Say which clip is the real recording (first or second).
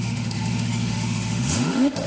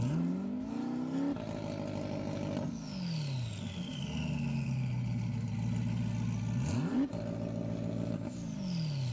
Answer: second